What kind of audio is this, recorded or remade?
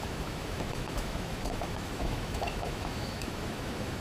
remade